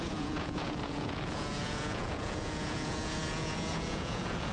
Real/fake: fake